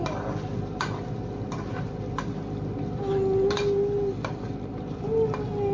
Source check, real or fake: real